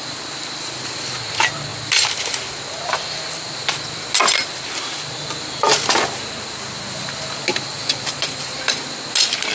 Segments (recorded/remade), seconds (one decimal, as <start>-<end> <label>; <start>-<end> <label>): 0.0-7.7 recorded; 7.7-8.6 remade; 8.6-9.5 recorded